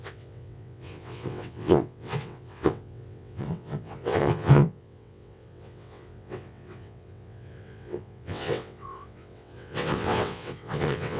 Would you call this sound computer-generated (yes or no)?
yes